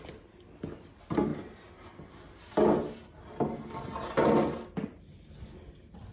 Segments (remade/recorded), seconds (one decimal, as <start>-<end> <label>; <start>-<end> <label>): 0.0-6.1 recorded